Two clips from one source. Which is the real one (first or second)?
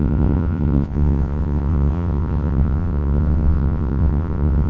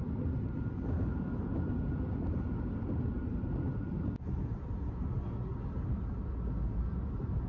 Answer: second